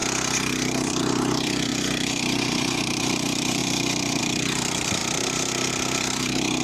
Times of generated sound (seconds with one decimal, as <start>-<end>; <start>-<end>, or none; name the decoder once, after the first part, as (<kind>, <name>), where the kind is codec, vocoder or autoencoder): 1.0-1.7 (vocoder, BigVGAN v2); 2.5-3.6; 4.2-6.6